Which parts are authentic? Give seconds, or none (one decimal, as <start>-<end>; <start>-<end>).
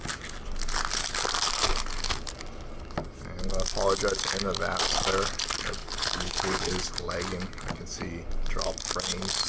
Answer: 0.0-5.8; 6.7-9.5